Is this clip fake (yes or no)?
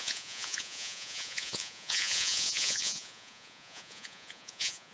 yes